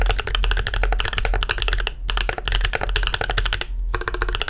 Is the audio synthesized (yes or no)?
no